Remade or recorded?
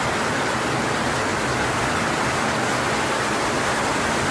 recorded